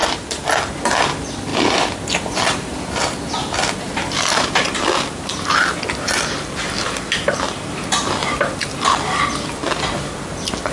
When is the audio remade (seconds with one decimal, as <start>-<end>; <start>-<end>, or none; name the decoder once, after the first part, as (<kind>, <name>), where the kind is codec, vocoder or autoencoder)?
1.5-4.5 (vocoder, BigVGAN v2)